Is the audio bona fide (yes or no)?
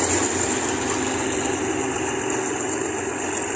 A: yes